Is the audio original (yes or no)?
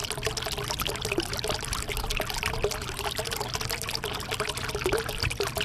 yes